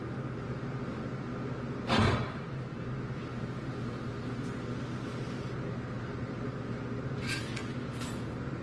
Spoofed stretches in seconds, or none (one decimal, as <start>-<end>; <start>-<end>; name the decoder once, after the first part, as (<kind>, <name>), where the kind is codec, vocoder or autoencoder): none